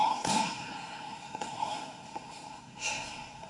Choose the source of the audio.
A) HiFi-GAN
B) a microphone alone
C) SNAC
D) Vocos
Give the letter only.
C